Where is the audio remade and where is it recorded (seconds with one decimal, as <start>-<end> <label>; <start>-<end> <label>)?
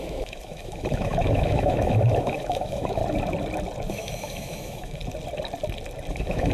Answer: 0.0-3.0 remade; 3.0-3.9 recorded; 3.9-5.0 remade; 5.0-6.1 recorded; 6.1-6.5 remade